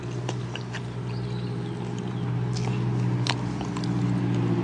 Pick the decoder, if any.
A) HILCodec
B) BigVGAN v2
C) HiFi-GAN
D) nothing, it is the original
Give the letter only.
D